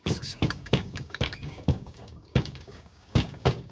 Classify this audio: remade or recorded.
remade